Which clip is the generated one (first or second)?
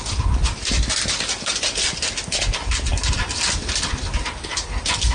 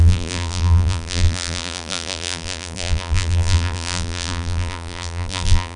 second